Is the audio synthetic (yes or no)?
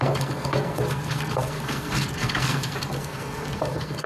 yes